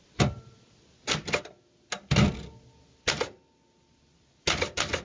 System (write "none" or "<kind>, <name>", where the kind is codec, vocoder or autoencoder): none